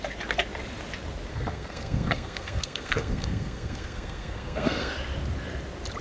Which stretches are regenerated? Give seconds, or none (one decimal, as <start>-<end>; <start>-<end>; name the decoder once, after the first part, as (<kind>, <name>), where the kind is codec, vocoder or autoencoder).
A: 1.3-4.9 (codec, SNAC)